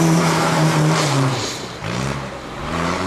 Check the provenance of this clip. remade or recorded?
remade